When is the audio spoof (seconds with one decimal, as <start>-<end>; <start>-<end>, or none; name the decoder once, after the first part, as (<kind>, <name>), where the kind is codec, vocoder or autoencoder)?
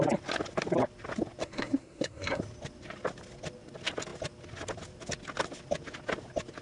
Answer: 1.4-2.4 (codec, SNAC)